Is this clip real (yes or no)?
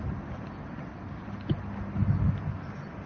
yes